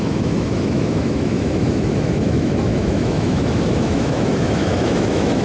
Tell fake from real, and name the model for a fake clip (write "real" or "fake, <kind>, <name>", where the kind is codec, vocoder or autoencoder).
fake, autoencoder, DAC-VAE